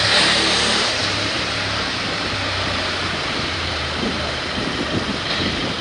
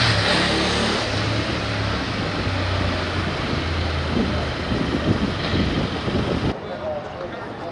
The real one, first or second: second